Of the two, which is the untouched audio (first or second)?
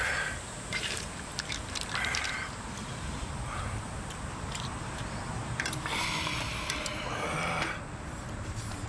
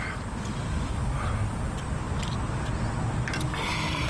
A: second